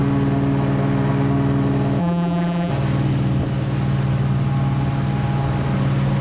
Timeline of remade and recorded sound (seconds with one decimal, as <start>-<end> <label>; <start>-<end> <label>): 0.0-2.0 recorded; 2.0-2.7 remade; 2.7-6.2 recorded